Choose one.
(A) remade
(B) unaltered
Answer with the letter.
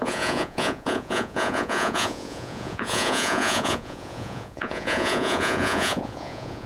A